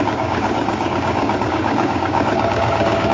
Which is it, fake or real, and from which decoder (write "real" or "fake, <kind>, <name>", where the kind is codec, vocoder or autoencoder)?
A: fake, codec, DAC